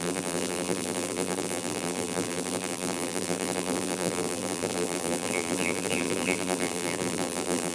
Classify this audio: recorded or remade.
remade